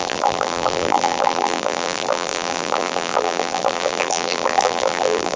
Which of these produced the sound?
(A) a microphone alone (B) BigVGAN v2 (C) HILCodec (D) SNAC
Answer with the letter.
B